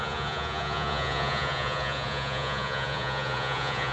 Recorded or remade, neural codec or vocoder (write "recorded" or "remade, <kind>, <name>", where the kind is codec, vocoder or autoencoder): remade, vocoder, Vocos